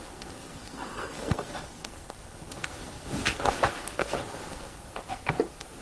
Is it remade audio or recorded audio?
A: remade